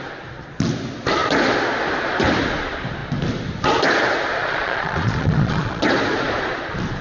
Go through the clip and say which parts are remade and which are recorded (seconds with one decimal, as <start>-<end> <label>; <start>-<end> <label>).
0.0-4.4 recorded; 4.4-5.8 remade; 5.8-7.0 recorded